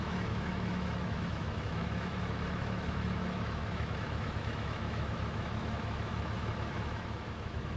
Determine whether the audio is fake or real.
fake